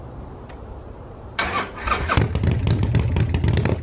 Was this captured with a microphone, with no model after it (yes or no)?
yes